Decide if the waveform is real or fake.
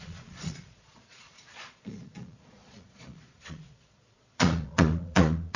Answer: fake